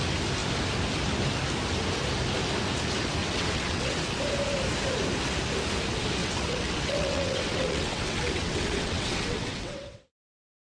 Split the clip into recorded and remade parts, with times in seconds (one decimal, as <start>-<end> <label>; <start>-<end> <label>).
0.0-3.2 recorded; 3.2-4.0 remade; 4.0-6.2 recorded; 6.2-10.4 remade; 10.4-10.8 recorded